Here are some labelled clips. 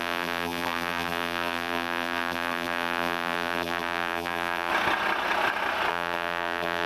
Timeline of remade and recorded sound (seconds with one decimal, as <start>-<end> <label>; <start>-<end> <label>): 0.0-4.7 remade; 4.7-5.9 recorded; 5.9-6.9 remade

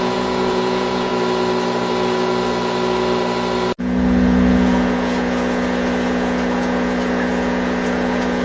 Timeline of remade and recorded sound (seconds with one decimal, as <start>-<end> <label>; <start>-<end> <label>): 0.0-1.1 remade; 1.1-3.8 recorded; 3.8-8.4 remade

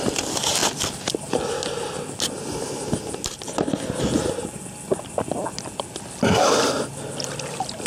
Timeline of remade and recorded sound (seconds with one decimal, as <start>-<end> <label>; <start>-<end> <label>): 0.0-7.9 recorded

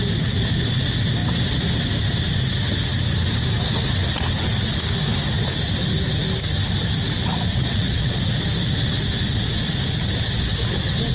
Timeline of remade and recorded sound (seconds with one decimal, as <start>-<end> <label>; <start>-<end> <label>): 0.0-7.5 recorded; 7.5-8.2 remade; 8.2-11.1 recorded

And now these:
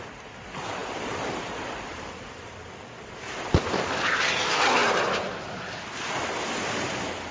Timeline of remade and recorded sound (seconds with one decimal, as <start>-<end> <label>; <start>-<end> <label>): 0.0-0.8 recorded; 0.8-2.4 remade; 2.4-4.8 recorded; 4.8-5.6 remade; 5.6-7.3 recorded

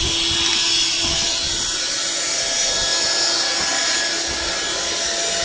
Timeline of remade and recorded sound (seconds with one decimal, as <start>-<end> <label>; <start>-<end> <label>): 0.0-5.4 recorded

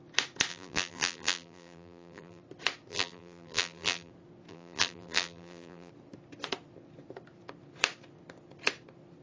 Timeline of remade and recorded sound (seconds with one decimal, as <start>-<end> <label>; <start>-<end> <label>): 0.0-0.5 recorded; 0.5-2.4 remade; 2.4-2.9 recorded; 2.9-4.1 remade; 4.1-4.5 recorded; 4.5-5.9 remade; 5.9-9.2 recorded

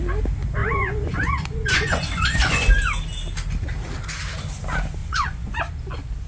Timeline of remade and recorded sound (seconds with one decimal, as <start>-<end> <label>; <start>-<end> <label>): 0.0-0.6 recorded; 0.6-2.7 remade; 2.7-5.0 recorded; 5.0-5.6 remade; 5.6-6.3 recorded